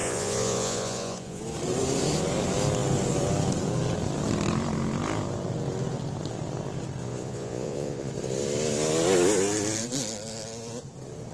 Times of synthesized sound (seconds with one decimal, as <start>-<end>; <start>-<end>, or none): 0.0-1.4; 7.0-8.1